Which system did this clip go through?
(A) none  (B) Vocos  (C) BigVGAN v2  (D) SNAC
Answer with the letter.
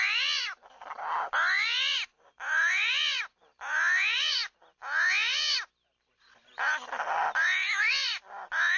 A